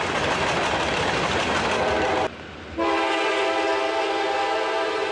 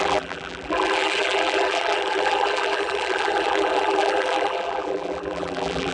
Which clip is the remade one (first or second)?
second